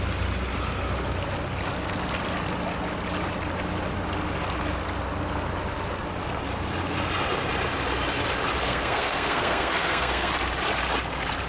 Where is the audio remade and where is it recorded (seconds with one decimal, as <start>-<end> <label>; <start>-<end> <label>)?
0.0-8.7 recorded; 8.7-10.3 remade; 10.3-11.5 recorded